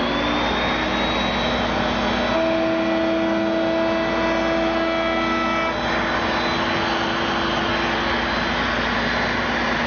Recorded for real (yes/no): yes